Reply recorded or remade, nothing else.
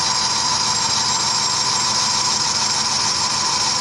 recorded